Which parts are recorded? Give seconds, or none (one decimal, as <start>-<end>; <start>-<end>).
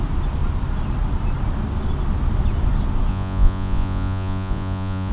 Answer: 0.0-3.1